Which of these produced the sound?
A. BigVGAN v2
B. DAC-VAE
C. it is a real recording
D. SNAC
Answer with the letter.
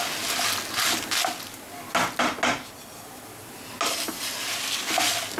C